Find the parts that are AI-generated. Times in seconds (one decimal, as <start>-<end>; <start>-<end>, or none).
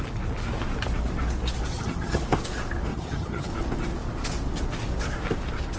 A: 1.7-2.2; 2.9-3.5